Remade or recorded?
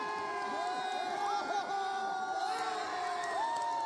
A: recorded